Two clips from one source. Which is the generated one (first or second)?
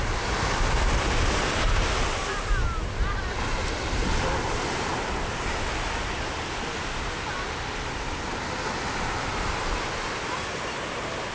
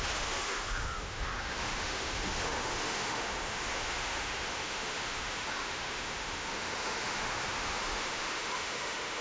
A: second